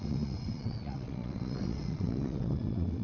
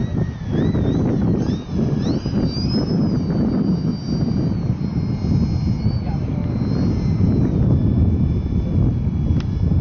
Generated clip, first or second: first